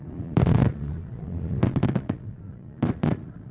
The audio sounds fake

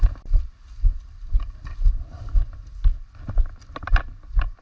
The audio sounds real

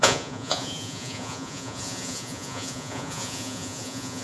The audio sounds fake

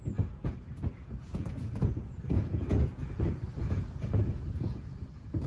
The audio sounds fake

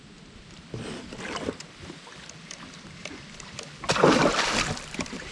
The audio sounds real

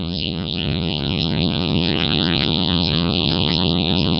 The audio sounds fake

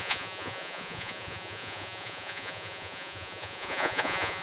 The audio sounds fake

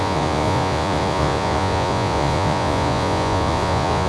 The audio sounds fake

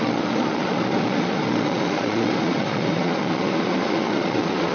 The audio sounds fake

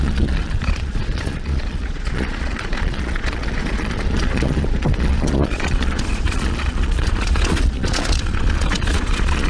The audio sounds fake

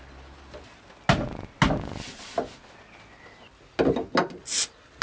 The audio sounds real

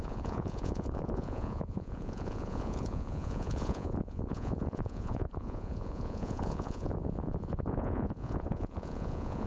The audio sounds fake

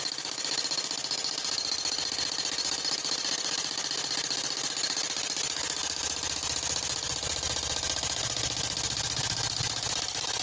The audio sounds real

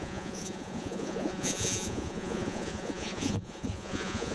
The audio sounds fake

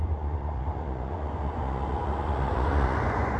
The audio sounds fake